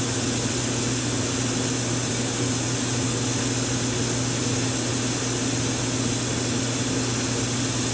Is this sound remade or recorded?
recorded